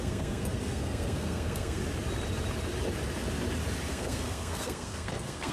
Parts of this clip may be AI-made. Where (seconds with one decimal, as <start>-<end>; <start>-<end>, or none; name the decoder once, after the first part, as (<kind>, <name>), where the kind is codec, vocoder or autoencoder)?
0.0-1.8 (codec, SNAC); 3.9-5.5